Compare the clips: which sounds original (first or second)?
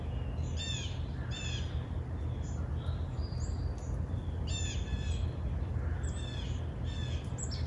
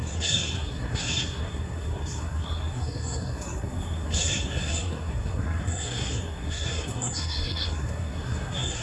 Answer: first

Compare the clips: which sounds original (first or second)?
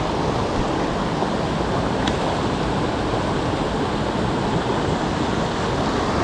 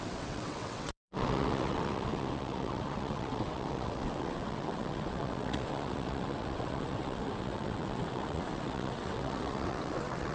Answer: first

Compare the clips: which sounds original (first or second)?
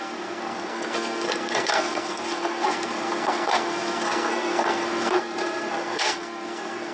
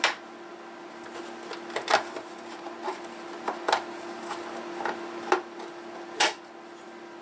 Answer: second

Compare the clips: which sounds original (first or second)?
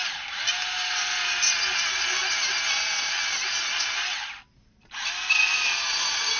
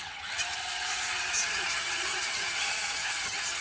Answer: first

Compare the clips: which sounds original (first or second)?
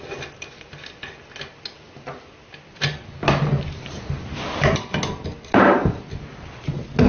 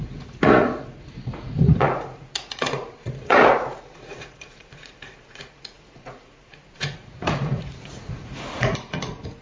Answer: first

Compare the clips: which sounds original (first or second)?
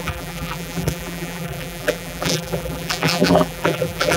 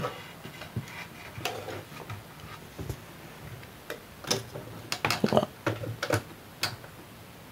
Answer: second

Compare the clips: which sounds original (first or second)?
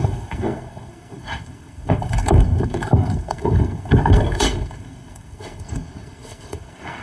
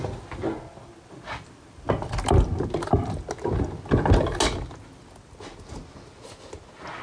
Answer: second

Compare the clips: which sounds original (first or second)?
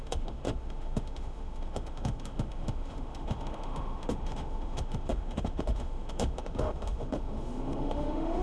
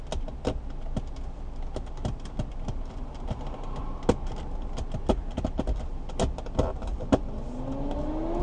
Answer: second